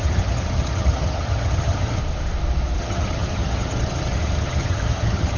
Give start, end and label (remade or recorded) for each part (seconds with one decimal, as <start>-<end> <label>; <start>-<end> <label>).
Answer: 0.0-2.0 remade; 2.0-2.8 recorded; 2.8-5.4 remade